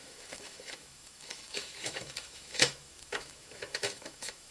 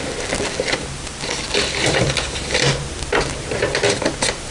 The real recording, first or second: second